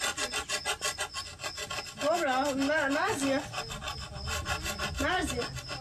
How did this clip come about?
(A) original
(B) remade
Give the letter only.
A